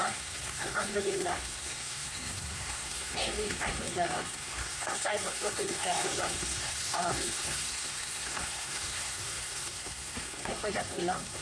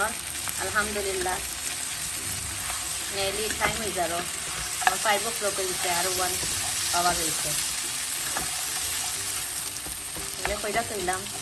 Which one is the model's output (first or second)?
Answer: first